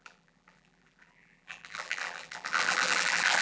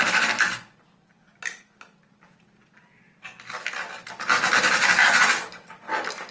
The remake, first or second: first